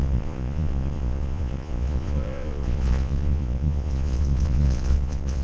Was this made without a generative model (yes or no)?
no